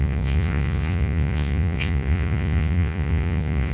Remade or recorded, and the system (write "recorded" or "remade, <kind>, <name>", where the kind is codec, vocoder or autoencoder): remade, vocoder, Vocos